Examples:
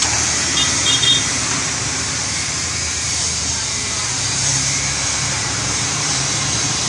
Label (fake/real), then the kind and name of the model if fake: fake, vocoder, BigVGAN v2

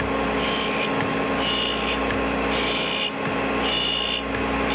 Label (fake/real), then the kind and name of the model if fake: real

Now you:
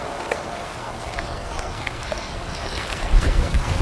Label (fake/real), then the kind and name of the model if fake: fake, codec, SNAC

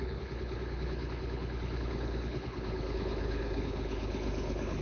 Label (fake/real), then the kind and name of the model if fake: fake, codec, HILCodec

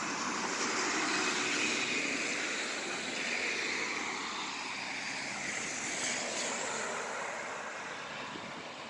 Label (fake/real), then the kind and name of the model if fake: real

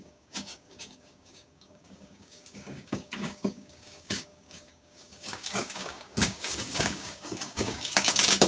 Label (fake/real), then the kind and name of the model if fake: fake, codec, DAC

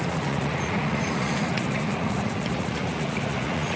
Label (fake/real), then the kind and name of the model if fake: fake, vocoder, Vocos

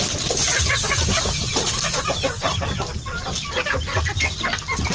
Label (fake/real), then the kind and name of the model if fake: real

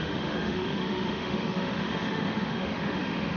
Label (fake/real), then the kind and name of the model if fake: fake, autoencoder, DAC-VAE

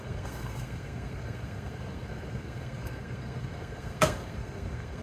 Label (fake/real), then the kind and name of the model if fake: fake, codec, SNAC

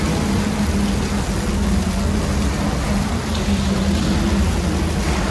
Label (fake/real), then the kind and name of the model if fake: real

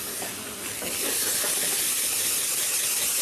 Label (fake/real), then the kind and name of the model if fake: real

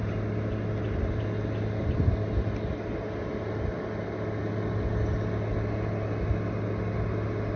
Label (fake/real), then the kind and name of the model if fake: real